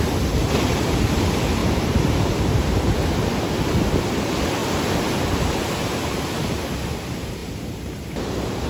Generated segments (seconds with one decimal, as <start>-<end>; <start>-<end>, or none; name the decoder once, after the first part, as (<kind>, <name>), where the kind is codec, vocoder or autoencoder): 1.6-2.8 (vocoder, BigVGAN v2); 4.6-6.2